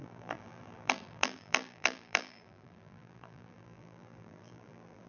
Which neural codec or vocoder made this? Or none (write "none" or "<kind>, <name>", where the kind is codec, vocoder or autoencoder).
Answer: vocoder, BigVGAN v2